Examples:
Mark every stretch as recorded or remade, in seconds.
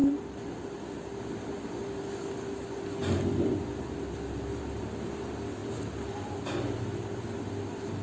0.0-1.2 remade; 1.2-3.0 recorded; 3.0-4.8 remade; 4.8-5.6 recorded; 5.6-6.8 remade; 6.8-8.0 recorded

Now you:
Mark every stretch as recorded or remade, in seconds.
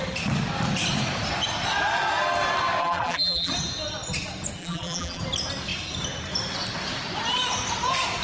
0.0-2.8 recorded; 2.8-3.5 remade; 3.5-4.6 recorded; 4.6-5.2 remade; 5.2-8.2 recorded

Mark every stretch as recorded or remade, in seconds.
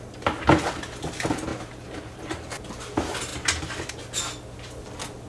0.0-1.5 recorded; 1.5-2.5 remade; 2.5-5.3 recorded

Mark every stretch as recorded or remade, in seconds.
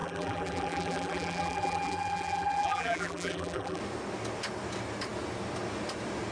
0.0-3.8 remade; 3.8-6.3 recorded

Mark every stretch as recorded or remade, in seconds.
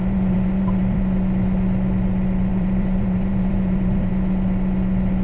0.0-1.0 remade; 1.0-2.5 recorded; 2.5-4.1 remade; 4.1-5.2 recorded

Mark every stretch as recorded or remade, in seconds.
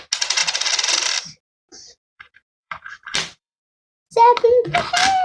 0.0-2.1 recorded; 2.1-3.6 remade; 3.6-5.2 recorded